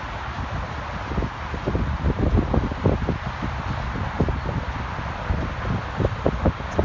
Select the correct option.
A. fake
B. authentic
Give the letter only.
B